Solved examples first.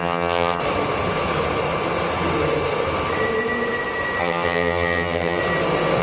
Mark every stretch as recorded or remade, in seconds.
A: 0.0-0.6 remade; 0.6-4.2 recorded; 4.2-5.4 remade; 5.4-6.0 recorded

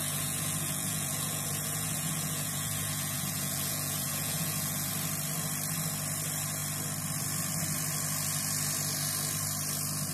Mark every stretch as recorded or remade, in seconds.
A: 0.0-4.9 remade; 4.9-10.1 recorded

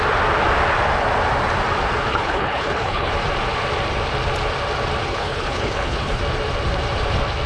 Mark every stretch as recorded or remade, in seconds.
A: 0.0-2.1 recorded; 2.1-3.1 remade; 3.1-5.1 recorded; 5.1-6.2 remade; 6.2-7.5 recorded

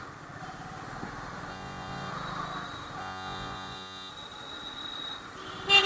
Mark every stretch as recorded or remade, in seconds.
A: 0.0-1.5 recorded; 1.5-2.1 remade; 2.1-3.0 recorded; 3.0-4.1 remade; 4.1-5.9 recorded